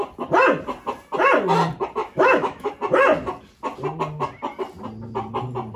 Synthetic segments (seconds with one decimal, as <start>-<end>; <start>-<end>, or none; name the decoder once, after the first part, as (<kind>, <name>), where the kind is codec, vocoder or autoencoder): 2.0-2.7 (autoencoder, DAC-VAE)

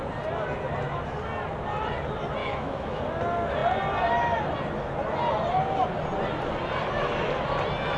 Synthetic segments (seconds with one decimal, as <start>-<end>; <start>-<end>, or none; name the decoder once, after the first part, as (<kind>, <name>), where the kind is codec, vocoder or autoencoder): 2.4-3.0 (autoencoder, DAC-VAE)

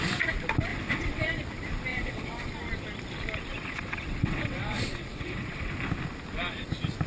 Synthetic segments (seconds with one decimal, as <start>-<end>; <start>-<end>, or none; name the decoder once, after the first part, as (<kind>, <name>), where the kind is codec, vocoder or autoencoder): 0.7-1.4 (vocoder, WaveNeXt); 1.9-2.5; 3.5-5.7

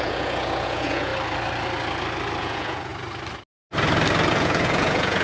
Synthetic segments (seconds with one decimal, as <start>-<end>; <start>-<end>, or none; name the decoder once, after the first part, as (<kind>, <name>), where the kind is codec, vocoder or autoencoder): 0.0-1.1 (vocoder, Vocos); 2.4-2.9; 4.3-5.2

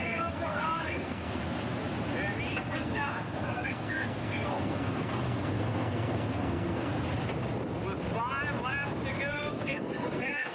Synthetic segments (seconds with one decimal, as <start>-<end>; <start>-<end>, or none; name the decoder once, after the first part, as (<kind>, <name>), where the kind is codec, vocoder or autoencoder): 0.0-1.4 (codec, SNAC); 2.5-6.9; 9.3-10.5

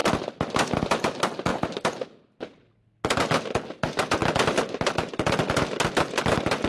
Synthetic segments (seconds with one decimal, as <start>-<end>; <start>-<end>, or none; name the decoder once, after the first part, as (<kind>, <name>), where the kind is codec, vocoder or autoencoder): none

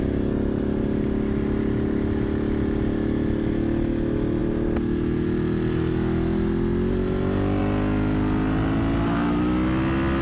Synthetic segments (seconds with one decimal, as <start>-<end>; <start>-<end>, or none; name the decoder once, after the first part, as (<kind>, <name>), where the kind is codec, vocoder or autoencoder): none